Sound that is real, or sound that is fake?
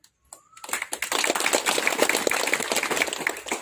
real